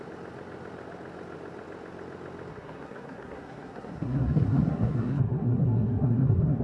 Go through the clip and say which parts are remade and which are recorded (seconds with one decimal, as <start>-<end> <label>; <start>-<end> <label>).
0.0-2.5 recorded; 2.5-6.6 remade